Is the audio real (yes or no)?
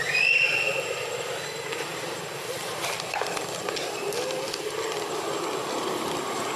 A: yes